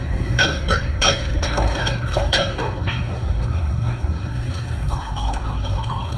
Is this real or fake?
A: fake